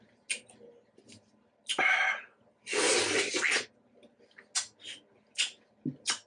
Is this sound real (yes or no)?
yes